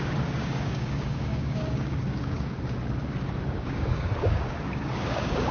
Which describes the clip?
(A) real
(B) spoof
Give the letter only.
B